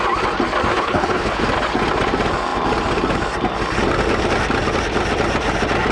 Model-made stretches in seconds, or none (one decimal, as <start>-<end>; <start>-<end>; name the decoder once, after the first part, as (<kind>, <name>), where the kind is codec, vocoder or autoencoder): 0.7-1.4 (codec, HILCodec)